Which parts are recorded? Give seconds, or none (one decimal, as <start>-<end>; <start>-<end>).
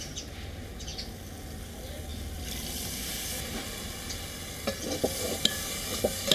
0.0-6.3